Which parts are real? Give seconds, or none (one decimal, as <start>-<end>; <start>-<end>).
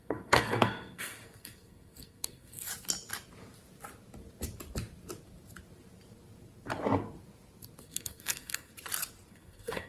2.7-7.8; 8.7-9.3